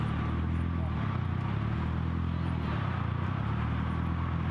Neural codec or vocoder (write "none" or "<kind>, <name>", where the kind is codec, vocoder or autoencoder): none